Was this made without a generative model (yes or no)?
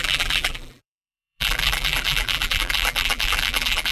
no